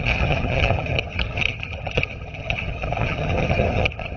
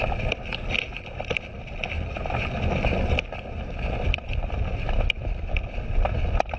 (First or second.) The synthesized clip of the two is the first